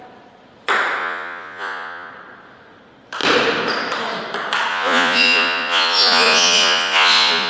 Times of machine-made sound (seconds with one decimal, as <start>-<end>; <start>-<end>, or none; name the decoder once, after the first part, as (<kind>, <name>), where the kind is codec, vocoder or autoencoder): 1.0-2.1 (vocoder, Vocos); 4.7-7.5